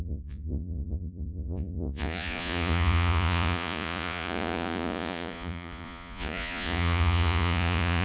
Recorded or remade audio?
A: remade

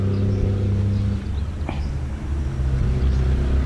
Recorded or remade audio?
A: recorded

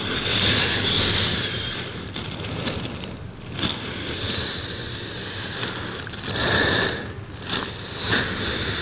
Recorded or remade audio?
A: recorded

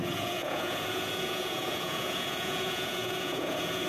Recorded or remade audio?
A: remade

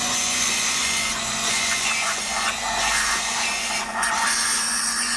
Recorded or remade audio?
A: remade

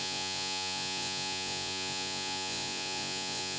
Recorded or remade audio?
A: remade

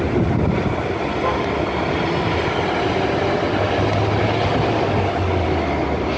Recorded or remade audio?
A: recorded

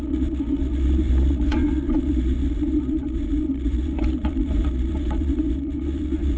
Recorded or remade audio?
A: remade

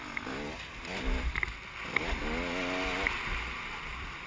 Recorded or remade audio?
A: recorded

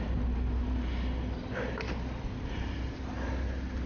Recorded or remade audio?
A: recorded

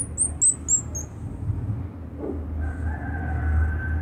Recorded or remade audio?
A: recorded